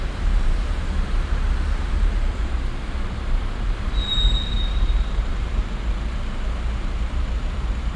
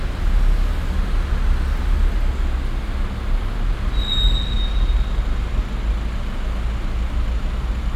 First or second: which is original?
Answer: second